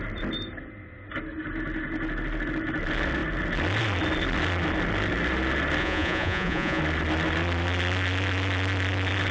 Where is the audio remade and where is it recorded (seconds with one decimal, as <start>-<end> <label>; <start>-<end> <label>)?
0.0-5.8 recorded; 5.8-6.8 remade; 6.8-9.3 recorded